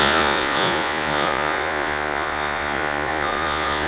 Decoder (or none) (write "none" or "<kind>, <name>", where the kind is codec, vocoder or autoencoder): vocoder, Vocos